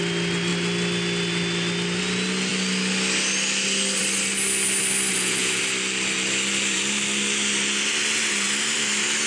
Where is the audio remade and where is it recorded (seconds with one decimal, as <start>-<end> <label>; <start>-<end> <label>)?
0.0-5.1 recorded; 5.1-5.6 remade; 5.6-9.3 recorded